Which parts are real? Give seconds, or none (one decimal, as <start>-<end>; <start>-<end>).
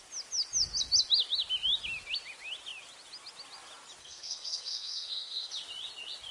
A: 0.0-4.0; 5.5-6.3